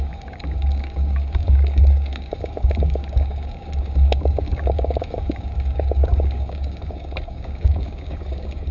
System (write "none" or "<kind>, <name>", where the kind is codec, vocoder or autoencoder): codec, DAC